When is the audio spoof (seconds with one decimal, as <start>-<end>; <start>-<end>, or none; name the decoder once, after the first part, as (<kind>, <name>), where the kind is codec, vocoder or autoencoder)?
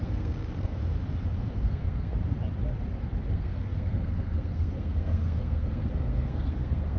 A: 0.0-0.8 (codec, SNAC); 1.6-2.1; 3.3-7.0